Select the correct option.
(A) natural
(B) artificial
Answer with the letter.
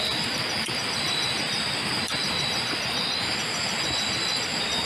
A